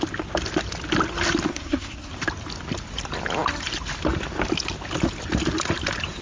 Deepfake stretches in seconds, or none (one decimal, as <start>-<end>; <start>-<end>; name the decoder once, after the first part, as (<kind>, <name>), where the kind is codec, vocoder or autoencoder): 1.5-2.1 (codec, SNAC)